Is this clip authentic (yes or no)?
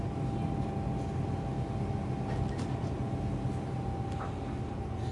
yes